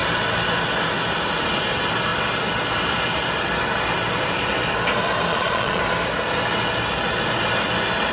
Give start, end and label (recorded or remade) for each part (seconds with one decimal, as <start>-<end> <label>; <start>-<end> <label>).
0.0-5.3 recorded; 5.3-5.8 remade; 5.8-8.1 recorded